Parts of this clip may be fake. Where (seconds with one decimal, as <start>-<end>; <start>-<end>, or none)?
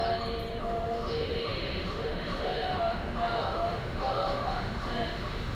0.6-5.5